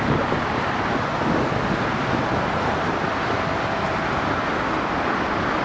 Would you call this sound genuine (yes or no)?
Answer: yes